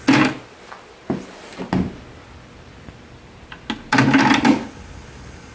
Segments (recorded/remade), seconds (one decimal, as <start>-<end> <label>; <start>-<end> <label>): 0.0-5.5 recorded